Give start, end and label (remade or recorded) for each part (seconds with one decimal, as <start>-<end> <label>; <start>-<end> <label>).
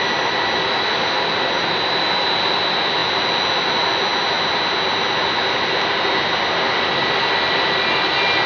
0.0-8.5 recorded